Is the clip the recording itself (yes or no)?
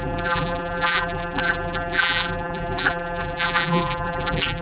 no